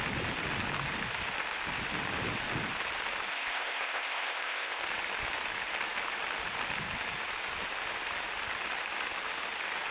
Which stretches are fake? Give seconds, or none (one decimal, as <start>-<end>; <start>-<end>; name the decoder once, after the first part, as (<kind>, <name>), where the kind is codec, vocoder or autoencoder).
3.3-4.8 (codec, ZipCodec)